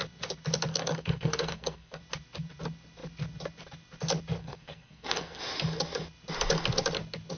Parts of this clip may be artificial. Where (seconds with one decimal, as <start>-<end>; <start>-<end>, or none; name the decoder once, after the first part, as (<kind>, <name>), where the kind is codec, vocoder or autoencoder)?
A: 0.7-2.0 (codec, SNAC); 4.4-5.4

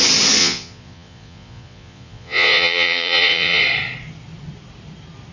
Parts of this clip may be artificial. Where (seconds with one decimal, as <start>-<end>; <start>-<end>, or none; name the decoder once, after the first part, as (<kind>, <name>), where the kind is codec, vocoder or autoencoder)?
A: 0.4-3.6 (vocoder, Vocos)

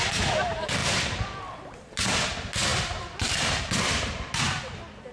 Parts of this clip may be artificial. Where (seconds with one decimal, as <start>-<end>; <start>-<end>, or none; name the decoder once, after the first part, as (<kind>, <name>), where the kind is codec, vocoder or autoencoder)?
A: 0.8-1.4 (vocoder, BigVGAN v2)